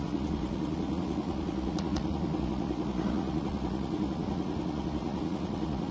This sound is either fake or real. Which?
fake